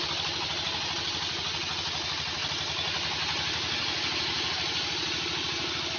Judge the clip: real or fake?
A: real